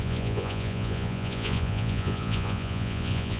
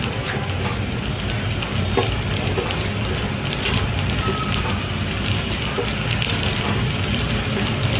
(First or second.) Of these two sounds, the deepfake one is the first